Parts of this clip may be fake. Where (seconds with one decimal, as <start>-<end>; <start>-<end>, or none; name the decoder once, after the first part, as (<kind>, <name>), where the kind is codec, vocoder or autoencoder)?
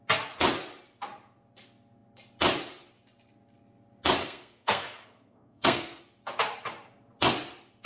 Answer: 4.2-6.0 (codec, SNAC)